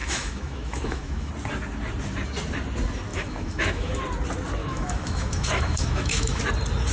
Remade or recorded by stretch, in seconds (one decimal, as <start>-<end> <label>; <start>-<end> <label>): 0.0-1.3 remade; 1.3-3.1 recorded; 3.1-4.0 remade; 4.0-4.6 recorded; 4.6-6.4 remade; 6.4-6.9 recorded